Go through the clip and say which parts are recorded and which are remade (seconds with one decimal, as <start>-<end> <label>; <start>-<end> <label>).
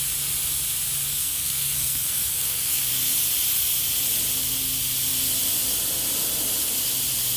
0.0-1.1 recorded; 1.1-2.9 remade; 2.9-7.4 recorded